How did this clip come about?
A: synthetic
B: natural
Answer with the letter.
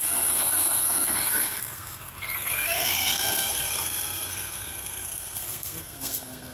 A